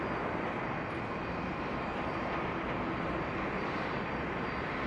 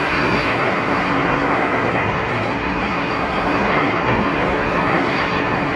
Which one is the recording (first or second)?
first